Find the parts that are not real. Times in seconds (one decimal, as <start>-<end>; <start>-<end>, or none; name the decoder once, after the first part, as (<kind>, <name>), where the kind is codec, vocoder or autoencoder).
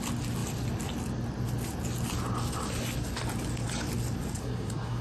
4.4-5.0 (codec, SNAC)